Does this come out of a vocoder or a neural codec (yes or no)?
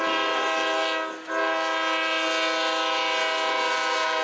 no